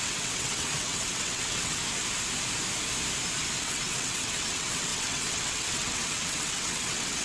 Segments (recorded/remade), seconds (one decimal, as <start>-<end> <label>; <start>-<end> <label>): 0.0-1.8 remade; 1.8-3.6 recorded; 3.6-7.2 remade